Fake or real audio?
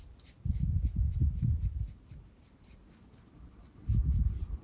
real